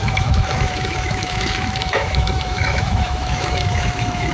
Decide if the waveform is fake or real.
fake